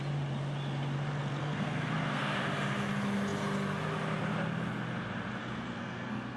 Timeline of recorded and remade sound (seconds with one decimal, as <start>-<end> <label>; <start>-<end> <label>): 0.0-1.4 recorded; 1.4-2.4 remade; 2.4-5.4 recorded; 5.4-6.4 remade